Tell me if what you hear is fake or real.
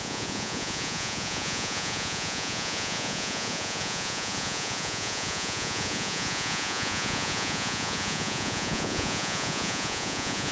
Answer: fake